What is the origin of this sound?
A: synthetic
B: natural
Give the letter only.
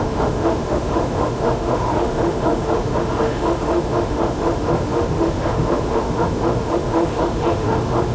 A